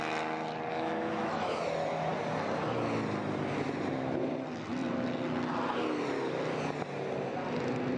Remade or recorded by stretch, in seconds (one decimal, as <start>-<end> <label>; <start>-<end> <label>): 0.0-0.7 recorded; 0.7-1.6 remade; 1.6-8.0 recorded